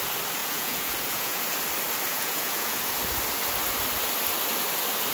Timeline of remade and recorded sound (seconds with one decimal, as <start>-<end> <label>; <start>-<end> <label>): 0.0-0.4 recorded; 0.4-1.4 remade; 1.4-2.1 recorded; 2.1-3.0 remade; 3.0-5.1 recorded